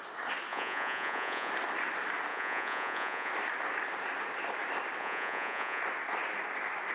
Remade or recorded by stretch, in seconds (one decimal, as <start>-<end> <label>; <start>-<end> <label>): 0.0-0.5 recorded; 0.5-1.5 remade; 1.5-2.3 recorded; 2.3-3.3 remade; 3.3-5.0 recorded; 5.0-5.8 remade; 5.8-6.9 recorded

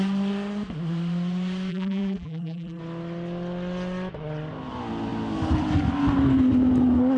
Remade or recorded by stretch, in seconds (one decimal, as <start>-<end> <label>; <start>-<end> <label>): 0.0-1.7 recorded; 1.7-2.8 remade; 2.8-7.2 recorded

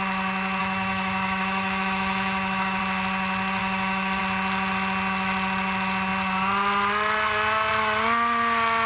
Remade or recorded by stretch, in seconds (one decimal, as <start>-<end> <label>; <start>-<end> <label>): 0.0-0.6 recorded; 0.6-2.8 remade; 2.8-3.6 recorded; 3.6-4.2 remade; 4.2-8.9 recorded

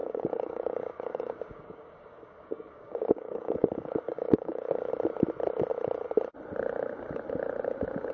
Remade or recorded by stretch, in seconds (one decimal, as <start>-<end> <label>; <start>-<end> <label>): 0.0-4.9 remade; 4.9-8.1 recorded

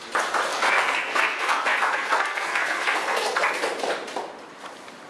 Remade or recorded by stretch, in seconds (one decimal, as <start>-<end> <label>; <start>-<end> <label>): 0.0-0.5 recorded; 0.5-3.6 remade; 3.6-5.1 recorded

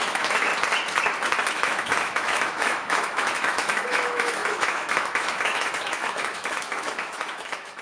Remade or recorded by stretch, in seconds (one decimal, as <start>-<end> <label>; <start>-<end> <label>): 0.0-0.5 remade; 0.5-1.5 recorded; 1.5-7.8 remade

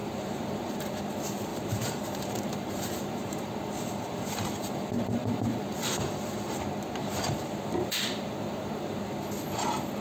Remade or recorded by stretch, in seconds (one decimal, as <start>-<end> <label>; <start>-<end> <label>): 0.0-1.0 remade; 1.0-1.5 recorded; 1.5-6.1 remade; 6.1-7.0 recorded; 7.0-9.0 remade; 9.0-10.0 recorded

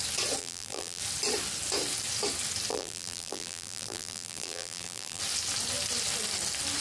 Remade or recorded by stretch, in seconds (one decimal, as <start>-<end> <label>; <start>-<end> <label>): 0.0-0.4 recorded; 0.4-1.0 remade; 1.0-2.7 recorded; 2.7-5.2 remade; 5.2-6.8 recorded